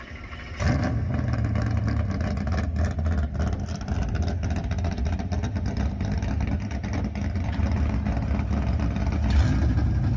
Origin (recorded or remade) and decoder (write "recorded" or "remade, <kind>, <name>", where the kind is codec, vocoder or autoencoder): recorded